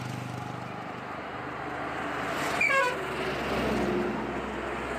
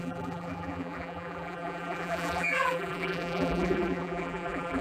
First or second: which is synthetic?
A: second